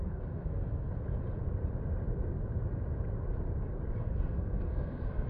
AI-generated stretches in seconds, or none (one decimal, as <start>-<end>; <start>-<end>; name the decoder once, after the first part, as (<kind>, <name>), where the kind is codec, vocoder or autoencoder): 0.0-0.9 (codec, SNAC); 4.0-5.3